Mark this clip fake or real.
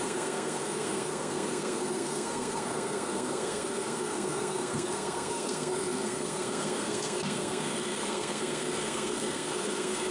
fake